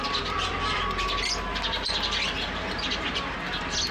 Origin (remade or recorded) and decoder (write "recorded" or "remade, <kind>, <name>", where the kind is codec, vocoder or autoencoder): recorded